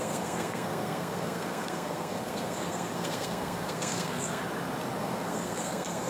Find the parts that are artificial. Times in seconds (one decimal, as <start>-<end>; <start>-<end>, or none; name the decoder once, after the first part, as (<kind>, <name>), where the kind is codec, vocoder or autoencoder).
0.0-4.4 (codec, SNAC); 5.0-6.1